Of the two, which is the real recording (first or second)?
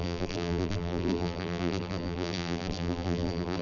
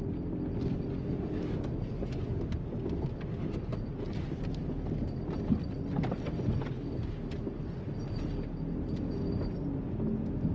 second